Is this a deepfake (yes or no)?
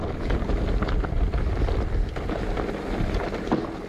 no